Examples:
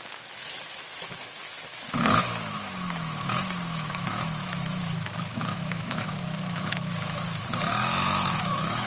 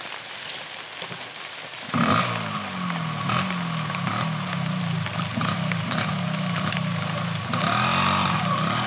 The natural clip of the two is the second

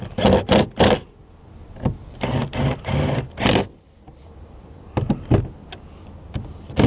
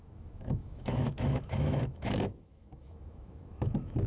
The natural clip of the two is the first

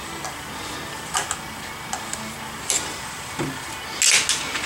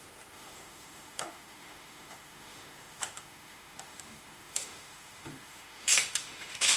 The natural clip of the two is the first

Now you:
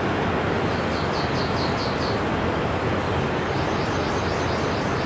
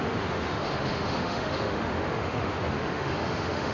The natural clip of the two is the first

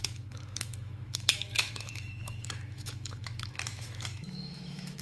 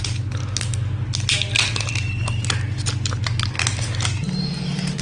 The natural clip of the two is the second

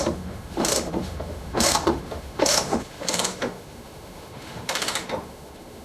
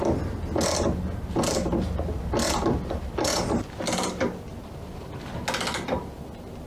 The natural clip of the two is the second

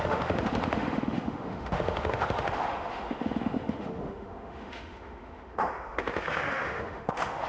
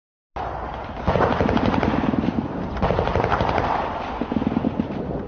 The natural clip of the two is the second